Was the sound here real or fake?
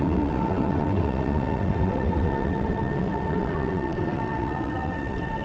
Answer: fake